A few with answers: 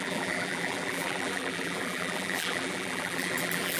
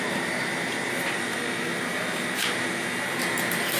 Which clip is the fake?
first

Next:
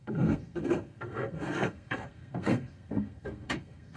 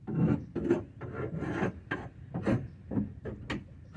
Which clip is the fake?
first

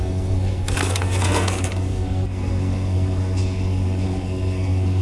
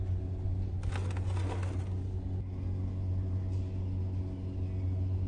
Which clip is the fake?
first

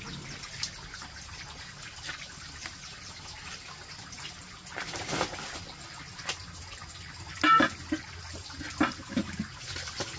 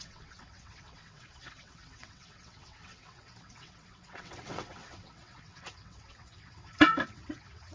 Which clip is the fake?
second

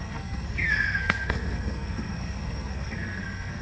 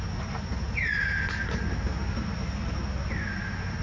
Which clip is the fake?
first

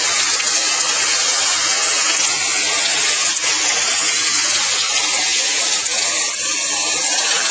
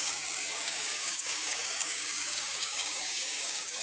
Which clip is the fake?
second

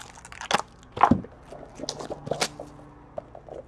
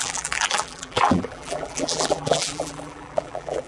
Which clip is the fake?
second